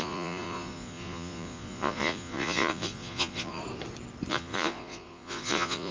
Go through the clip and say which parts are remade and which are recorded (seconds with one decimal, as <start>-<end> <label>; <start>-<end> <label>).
0.0-3.6 remade; 3.6-4.3 recorded; 4.3-5.9 remade